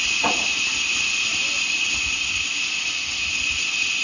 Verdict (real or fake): real